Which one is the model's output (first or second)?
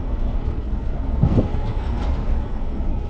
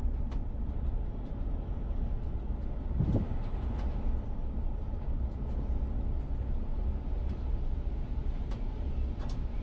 first